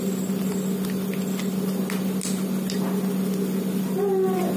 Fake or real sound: real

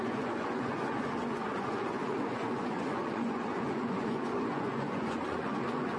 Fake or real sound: fake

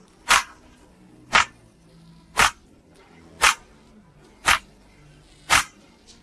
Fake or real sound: real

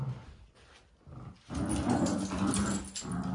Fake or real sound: real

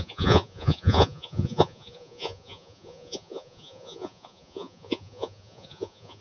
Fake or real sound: fake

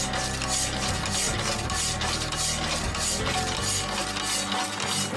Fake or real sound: real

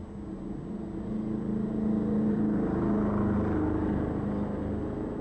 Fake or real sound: real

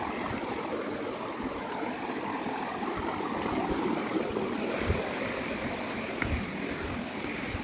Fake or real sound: real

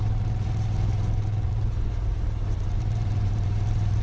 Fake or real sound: fake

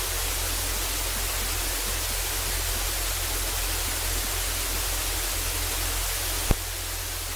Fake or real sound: real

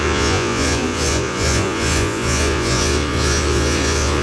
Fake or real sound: fake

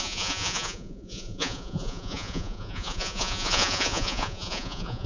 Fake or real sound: fake